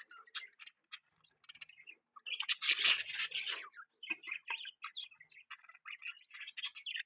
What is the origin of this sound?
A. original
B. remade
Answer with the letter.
A